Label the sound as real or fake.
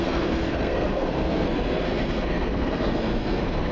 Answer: fake